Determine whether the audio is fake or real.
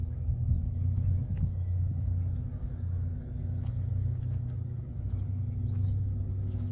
fake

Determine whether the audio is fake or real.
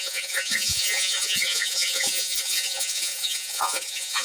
fake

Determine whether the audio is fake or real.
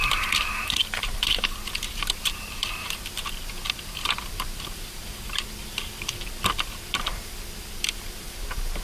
fake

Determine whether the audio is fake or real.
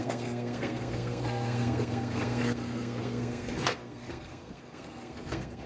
fake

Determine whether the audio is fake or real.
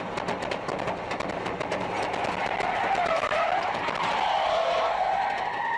real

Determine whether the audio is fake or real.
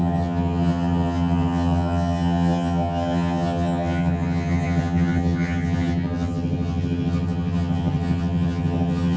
fake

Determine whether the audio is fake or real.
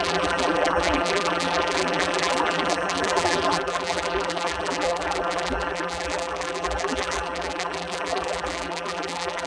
fake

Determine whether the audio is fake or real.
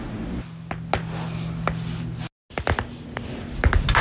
real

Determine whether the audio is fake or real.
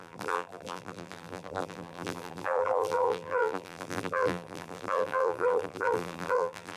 fake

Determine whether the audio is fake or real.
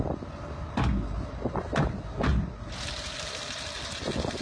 real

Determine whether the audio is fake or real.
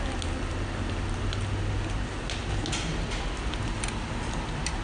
real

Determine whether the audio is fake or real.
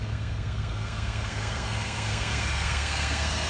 fake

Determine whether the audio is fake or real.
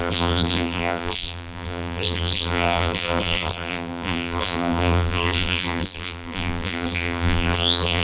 fake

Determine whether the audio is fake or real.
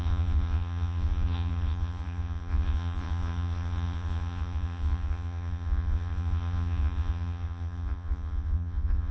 fake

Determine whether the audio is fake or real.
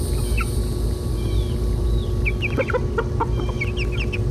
real